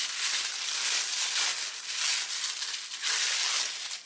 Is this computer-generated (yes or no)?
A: no